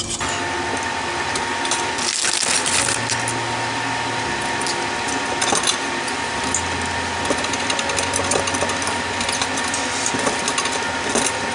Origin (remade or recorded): recorded